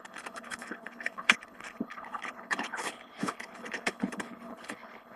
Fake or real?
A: fake